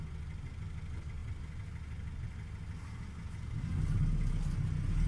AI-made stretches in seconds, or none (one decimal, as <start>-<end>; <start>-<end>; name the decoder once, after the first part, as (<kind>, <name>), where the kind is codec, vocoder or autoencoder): none